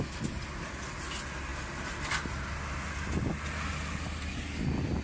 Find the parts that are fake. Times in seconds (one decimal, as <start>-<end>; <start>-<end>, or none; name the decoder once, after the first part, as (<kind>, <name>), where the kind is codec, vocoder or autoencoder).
none